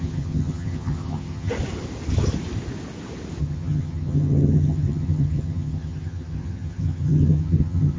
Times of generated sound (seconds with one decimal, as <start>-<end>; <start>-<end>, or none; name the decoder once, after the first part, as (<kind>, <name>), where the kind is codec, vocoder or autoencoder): 0.0-1.5 (vocoder, HiFi-GAN); 3.4-8.0